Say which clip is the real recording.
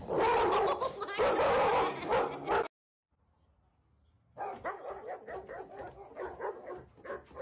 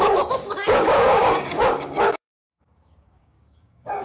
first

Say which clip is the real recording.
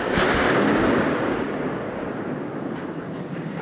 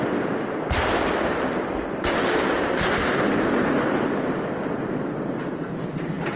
second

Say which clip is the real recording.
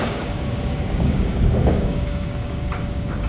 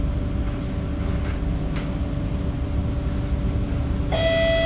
second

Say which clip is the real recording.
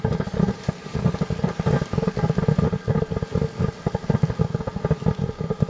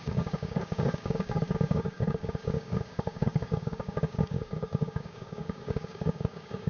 first